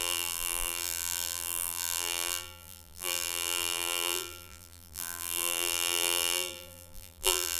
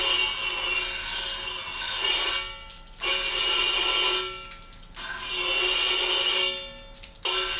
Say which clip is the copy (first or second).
first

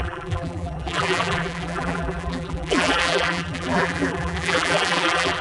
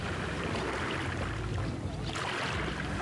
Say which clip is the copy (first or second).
first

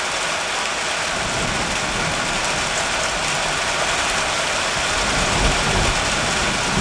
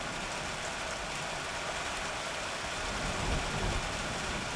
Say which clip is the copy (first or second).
second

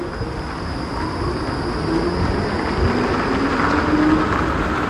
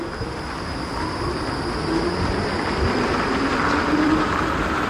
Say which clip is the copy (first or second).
second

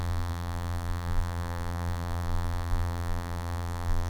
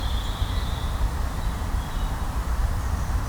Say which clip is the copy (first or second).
first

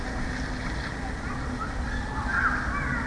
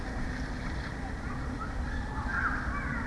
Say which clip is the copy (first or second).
second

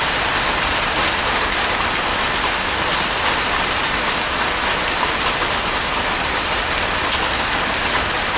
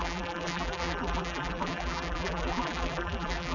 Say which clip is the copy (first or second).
second